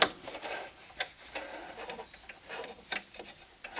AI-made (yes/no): no